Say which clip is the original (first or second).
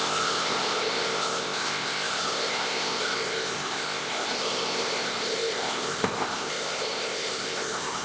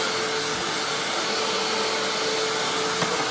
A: second